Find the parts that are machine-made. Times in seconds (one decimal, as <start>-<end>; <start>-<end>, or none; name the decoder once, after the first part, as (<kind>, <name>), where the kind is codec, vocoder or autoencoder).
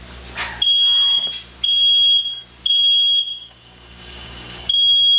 3.3-5.2 (codec, DAC)